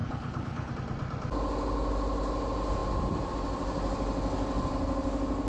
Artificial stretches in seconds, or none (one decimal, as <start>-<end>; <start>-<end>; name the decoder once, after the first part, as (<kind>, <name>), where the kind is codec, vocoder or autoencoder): 0.0-0.7 (codec, HILCodec)